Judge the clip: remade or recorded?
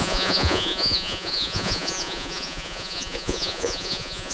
remade